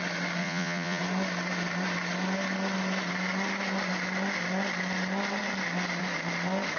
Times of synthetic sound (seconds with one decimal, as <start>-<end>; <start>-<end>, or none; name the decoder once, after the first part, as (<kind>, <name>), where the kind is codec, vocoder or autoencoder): 0.4-1.0 (vocoder, Vocos)